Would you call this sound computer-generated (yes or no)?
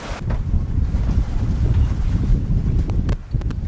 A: no